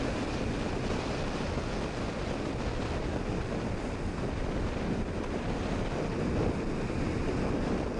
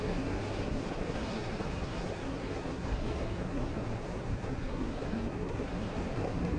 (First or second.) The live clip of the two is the first